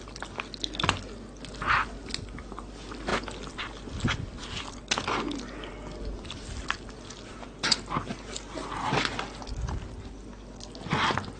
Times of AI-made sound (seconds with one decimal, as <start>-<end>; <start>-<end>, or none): none

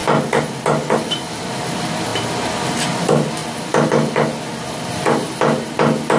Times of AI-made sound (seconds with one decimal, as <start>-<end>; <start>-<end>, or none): 3.4-3.9

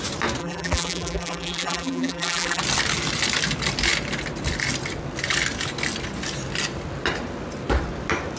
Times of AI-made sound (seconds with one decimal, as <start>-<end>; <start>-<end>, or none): 0.4-2.6

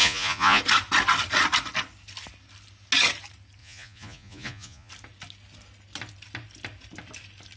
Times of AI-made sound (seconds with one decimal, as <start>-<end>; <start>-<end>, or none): 0.0-0.6; 3.6-4.9

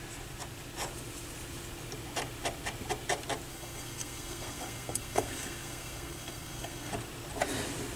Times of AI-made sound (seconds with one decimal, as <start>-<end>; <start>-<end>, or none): 3.5-6.9

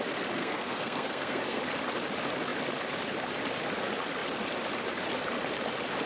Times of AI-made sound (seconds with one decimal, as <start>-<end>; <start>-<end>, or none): 0.4-1.6